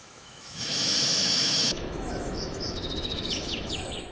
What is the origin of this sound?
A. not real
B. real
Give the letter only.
A